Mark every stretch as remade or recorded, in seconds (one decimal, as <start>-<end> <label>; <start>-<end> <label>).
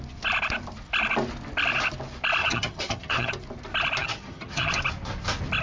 0.0-2.4 recorded; 2.4-3.3 remade; 3.3-4.0 recorded; 4.0-4.7 remade; 4.7-5.6 recorded